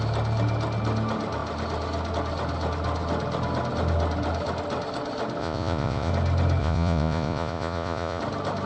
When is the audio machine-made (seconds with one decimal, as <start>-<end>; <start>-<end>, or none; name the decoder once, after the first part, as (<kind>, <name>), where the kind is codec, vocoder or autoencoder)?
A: 5.4-6.1 (vocoder, Vocos); 6.6-8.2